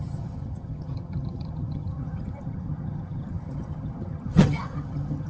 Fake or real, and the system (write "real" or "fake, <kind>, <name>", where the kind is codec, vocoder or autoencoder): fake, vocoder, HiFi-GAN